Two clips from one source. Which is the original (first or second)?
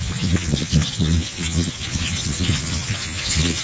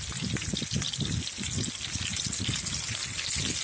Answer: second